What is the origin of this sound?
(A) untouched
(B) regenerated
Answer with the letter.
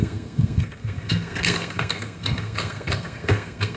B